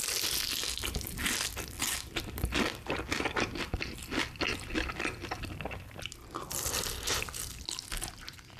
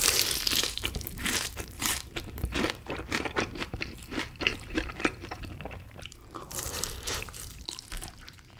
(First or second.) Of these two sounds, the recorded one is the first